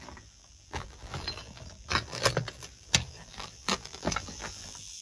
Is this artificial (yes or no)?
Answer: yes